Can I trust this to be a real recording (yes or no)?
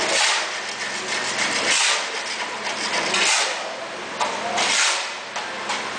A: yes